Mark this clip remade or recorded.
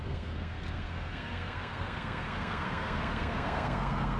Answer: remade